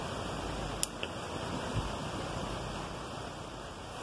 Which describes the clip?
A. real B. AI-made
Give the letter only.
A